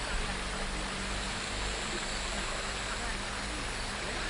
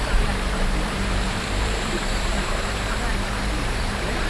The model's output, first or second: second